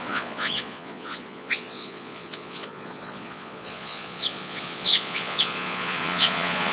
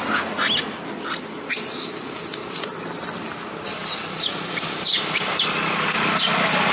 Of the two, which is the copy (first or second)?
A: first